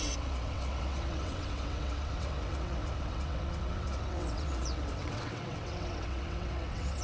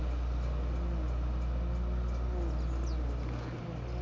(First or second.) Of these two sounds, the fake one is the first